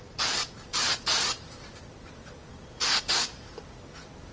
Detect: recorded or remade recorded